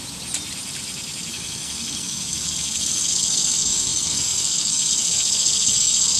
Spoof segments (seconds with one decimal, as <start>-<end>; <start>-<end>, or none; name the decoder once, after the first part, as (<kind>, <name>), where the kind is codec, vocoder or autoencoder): 1.3-6.2 (codec, SNAC)